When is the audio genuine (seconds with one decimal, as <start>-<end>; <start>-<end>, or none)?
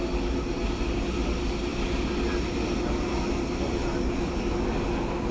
0.0-5.3